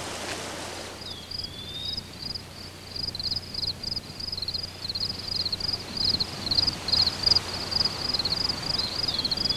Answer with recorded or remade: recorded